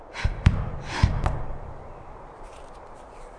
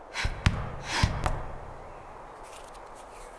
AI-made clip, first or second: first